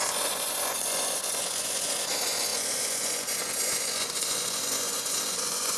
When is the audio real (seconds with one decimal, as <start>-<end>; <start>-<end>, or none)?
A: none